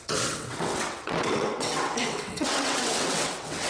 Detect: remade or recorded remade